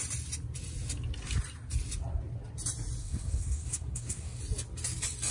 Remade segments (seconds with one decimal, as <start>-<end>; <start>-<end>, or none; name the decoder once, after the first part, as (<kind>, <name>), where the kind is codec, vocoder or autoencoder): 3.0-4.4 (codec, SNAC)